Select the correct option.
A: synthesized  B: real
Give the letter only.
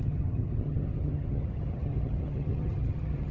A